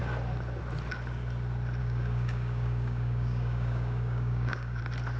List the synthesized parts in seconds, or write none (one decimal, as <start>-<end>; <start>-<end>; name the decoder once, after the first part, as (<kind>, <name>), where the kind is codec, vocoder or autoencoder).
1.8-4.8 (codec, DAC)